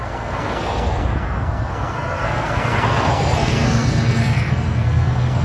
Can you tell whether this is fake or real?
fake